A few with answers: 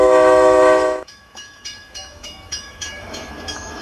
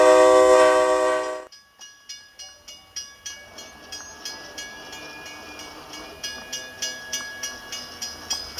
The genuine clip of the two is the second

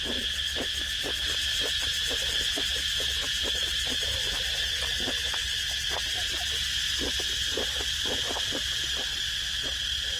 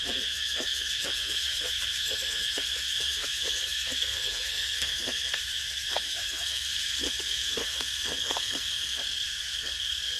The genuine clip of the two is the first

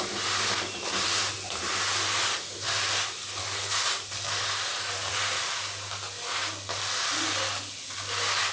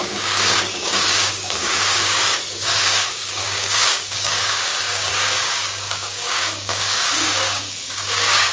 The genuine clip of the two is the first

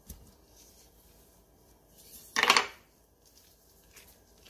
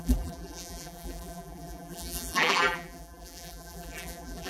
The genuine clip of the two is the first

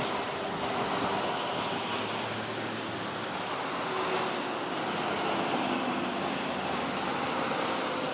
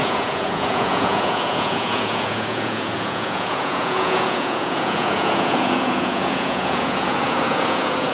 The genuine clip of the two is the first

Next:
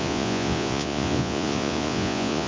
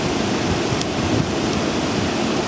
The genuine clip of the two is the second